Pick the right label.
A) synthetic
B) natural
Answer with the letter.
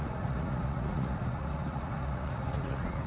A